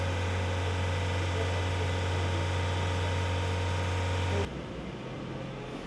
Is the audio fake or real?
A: real